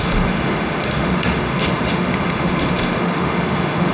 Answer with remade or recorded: remade